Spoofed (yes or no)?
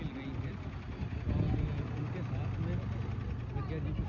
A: no